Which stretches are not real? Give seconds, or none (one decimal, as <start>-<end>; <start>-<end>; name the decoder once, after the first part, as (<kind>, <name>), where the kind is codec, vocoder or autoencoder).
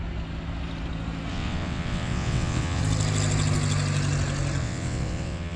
1.3-2.8 (vocoder, WaveNeXt); 4.6-5.6